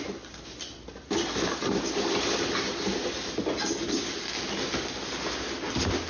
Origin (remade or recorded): recorded